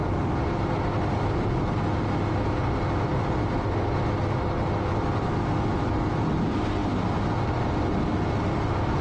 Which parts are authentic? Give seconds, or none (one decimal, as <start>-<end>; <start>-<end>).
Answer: 0.0-9.0